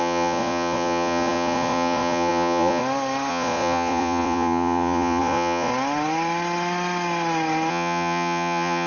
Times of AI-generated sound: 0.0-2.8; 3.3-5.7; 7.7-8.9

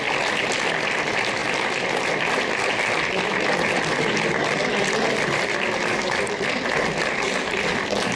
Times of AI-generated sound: none

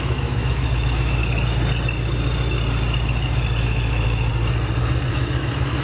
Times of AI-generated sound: 0.0-1.2; 3.6-4.3; 5.1-5.8